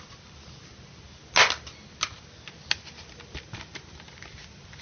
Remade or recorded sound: recorded